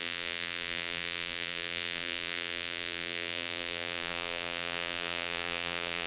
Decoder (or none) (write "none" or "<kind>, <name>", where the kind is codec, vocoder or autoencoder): vocoder, BigVGAN v2